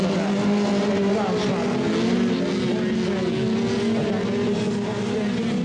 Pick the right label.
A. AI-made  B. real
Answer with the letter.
B